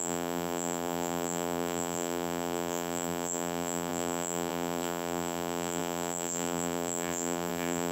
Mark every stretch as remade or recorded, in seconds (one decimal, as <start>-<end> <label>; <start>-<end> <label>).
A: 0.0-7.9 remade